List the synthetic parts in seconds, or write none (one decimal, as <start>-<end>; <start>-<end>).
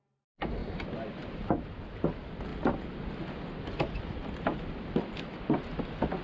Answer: none